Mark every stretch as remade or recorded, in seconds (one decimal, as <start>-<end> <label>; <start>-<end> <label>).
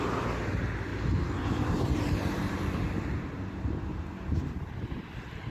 0.0-0.9 recorded; 0.9-4.0 remade; 4.0-5.5 recorded